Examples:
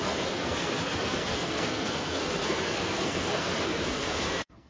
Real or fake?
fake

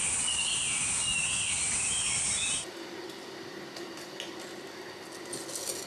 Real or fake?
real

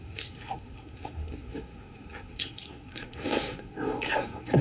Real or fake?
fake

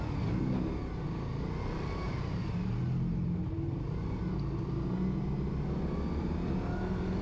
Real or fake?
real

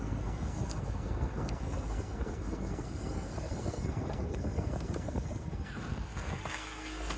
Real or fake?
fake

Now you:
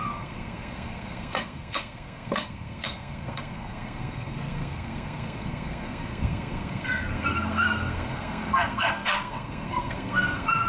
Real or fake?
fake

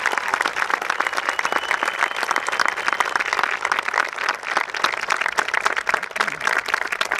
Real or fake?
real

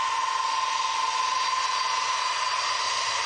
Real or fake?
real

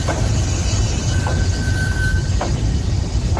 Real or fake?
real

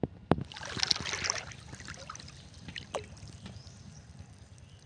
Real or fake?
real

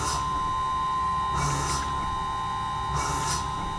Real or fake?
real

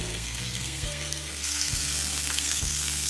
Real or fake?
fake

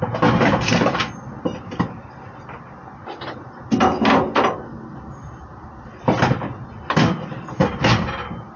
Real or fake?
real